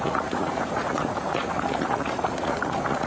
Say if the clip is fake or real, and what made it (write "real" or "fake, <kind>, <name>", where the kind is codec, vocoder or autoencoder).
fake, vocoder, Vocos